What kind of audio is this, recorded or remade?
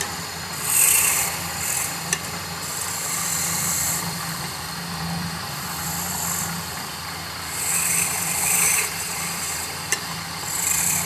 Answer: remade